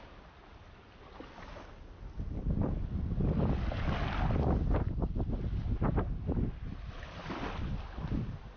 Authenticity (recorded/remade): recorded